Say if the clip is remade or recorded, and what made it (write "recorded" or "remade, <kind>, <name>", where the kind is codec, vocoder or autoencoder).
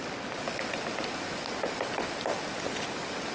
recorded